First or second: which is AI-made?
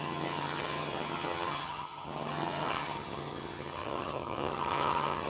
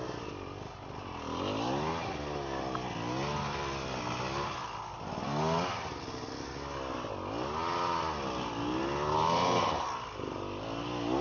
first